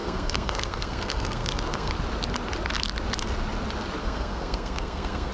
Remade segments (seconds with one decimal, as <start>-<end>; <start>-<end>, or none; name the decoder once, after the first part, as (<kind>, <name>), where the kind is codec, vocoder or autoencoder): 0.0-1.9 (codec, SNAC); 4.0-5.3